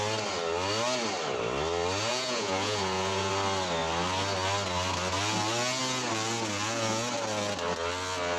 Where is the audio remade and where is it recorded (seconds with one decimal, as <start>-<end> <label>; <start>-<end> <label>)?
0.0-2.1 recorded; 2.1-3.3 remade; 3.3-8.4 recorded